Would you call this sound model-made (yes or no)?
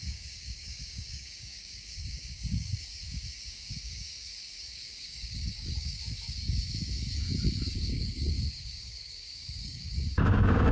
yes